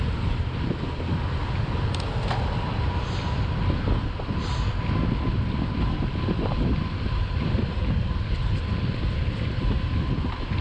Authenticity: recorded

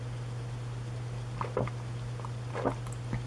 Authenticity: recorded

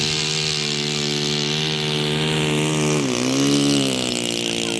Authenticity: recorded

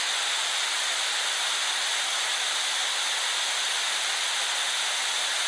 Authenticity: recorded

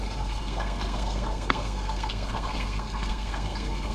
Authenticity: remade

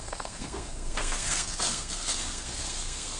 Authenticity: remade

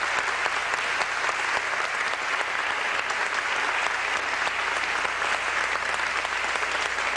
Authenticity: recorded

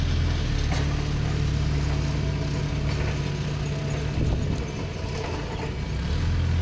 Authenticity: recorded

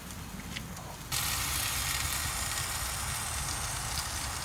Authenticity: recorded